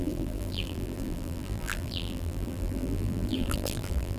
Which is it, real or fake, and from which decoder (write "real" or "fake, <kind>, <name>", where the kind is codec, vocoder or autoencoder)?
fake, vocoder, BigVGAN v2